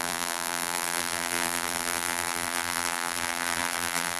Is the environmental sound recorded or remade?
remade